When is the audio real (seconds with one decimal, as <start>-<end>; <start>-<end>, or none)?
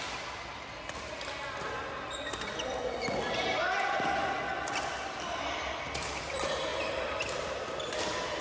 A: 0.0-8.4